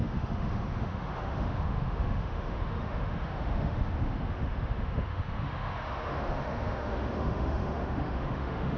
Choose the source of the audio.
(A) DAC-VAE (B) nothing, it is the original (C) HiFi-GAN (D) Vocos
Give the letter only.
A